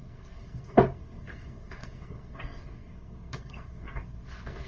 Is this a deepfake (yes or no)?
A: yes